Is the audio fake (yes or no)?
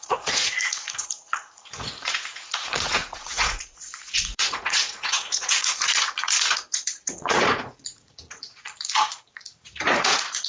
yes